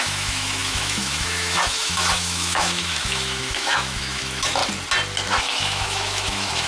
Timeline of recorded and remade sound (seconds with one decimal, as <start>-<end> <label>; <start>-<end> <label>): 0.0-4.6 remade; 4.6-5.4 recorded; 5.4-6.7 remade